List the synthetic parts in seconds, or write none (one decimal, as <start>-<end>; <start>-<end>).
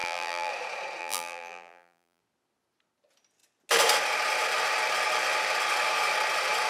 0.0-0.5; 1.0-2.2